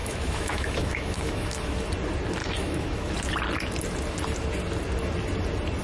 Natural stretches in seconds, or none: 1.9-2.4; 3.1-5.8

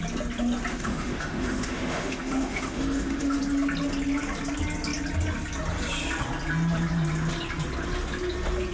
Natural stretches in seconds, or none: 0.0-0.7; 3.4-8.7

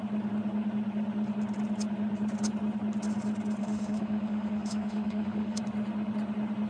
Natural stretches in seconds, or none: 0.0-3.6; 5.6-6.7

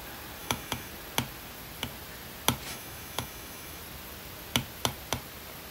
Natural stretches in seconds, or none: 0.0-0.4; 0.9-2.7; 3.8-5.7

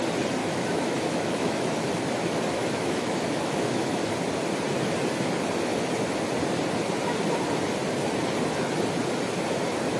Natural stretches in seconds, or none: 0.0-0.4; 1.9-2.6; 4.1-10.0

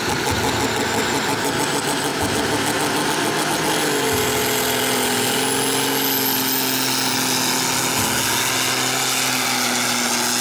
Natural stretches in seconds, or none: 0.0-10.4